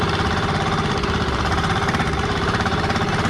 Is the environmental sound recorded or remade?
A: remade